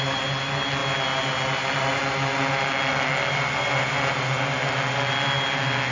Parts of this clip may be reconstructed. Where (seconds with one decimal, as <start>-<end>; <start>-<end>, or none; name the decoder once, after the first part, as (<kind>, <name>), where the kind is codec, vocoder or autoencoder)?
none